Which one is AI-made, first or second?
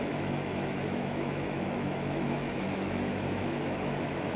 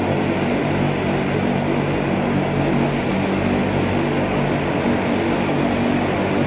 first